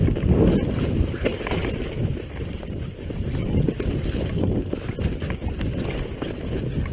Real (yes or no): yes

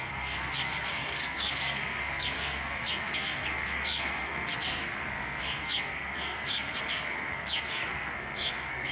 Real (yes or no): no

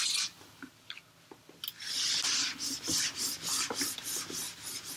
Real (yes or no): yes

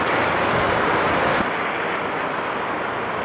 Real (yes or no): yes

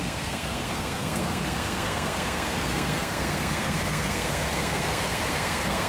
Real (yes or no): no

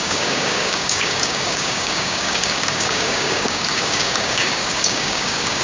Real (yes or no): no